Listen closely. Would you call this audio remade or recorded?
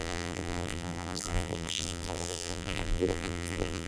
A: remade